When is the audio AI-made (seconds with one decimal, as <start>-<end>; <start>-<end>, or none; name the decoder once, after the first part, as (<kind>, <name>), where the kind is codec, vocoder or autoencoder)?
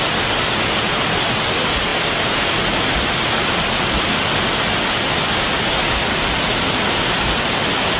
none